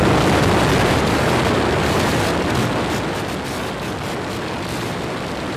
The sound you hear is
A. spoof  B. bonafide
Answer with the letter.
B